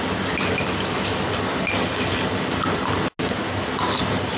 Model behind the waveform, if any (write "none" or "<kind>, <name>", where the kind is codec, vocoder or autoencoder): none